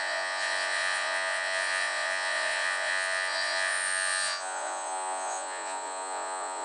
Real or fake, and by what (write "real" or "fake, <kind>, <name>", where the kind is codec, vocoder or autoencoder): fake, vocoder, Vocos